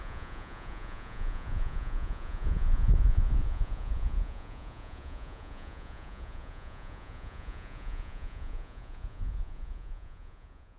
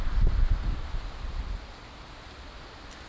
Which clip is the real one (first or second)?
second